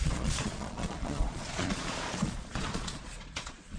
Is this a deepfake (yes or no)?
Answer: yes